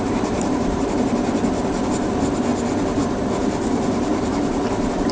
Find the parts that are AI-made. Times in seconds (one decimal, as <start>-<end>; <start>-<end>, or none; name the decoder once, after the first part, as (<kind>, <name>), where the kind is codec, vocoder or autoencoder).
0.0-2.5 (vocoder, BigVGAN v2); 3.1-5.1

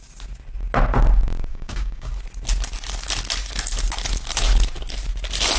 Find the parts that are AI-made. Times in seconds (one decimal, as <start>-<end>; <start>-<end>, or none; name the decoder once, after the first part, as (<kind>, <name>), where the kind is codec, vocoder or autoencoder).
1.5-2.1 (codec, DAC)

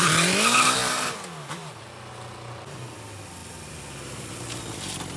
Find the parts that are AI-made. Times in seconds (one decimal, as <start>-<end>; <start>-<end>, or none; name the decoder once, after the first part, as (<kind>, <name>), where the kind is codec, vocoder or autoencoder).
3.4-4.4 (vocoder, BigVGAN v2)

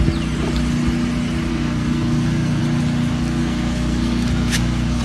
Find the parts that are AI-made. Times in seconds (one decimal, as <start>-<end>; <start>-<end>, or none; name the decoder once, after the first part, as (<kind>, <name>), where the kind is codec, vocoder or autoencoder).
1.5-2.6 (codec, SNAC); 3.1-5.0

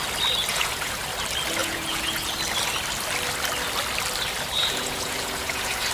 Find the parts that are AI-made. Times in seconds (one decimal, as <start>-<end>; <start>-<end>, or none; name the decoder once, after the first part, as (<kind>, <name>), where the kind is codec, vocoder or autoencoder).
0.5-1.0 (vocoder, Vocos); 1.6-2.3; 4.6-5.9

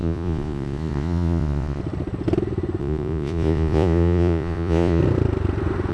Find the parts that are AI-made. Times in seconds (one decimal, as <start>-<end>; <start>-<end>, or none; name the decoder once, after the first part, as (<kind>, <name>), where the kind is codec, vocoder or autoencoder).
0.0-1.8 (vocoder, Vocos); 2.8-5.0

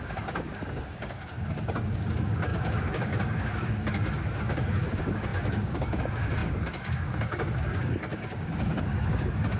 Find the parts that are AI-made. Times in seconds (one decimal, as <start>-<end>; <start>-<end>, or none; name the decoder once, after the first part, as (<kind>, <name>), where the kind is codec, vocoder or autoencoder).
0.0-9.6 (codec, DAC)